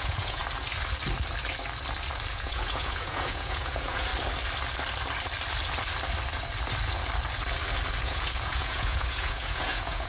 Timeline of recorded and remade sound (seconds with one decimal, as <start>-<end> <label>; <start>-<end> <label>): 0.0-0.4 remade; 0.4-2.3 recorded; 2.3-4.1 remade; 4.1-8.0 recorded; 8.0-10.1 remade